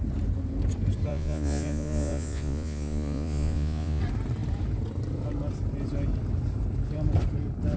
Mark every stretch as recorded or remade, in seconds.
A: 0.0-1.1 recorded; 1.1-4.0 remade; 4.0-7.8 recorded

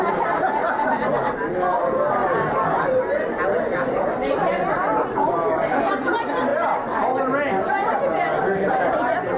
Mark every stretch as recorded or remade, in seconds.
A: 0.0-9.4 recorded

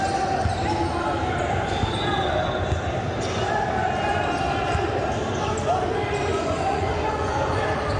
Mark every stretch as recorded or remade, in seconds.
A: 0.0-6.3 recorded; 6.3-7.6 remade; 7.6-8.0 recorded

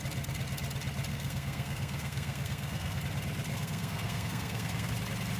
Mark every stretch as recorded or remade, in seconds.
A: 0.0-1.1 recorded; 1.1-3.0 remade; 3.0-3.5 recorded; 3.5-4.9 remade; 4.9-5.4 recorded

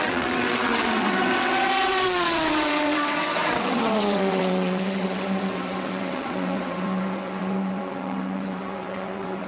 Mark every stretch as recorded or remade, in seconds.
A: 0.0-9.5 remade